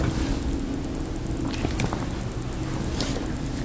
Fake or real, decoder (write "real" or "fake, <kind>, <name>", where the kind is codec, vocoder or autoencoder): real